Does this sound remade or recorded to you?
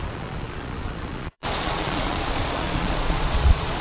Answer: remade